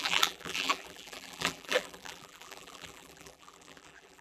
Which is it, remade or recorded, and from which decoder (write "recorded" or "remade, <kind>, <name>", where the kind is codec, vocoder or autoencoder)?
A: remade, vocoder, BigVGAN v2